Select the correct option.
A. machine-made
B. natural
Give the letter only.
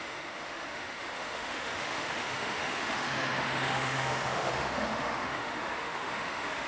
A